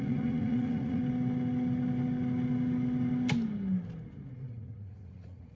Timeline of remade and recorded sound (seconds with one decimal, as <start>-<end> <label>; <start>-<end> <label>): 0.0-1.0 remade; 1.0-4.3 recorded; 4.3-5.5 remade